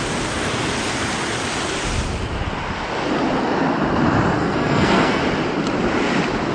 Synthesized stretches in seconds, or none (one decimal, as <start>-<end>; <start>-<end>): 4.4-5.2